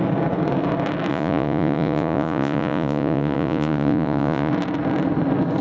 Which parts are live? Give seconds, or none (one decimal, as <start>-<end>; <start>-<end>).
0.0-1.1; 4.5-5.6